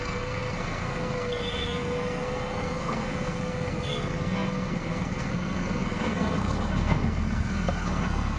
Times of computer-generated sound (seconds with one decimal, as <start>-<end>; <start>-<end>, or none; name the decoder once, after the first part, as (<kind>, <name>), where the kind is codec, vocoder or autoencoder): 0.0-8.4 (codec, SNAC)